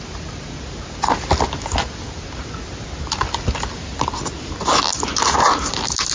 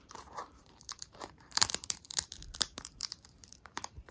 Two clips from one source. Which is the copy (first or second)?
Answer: second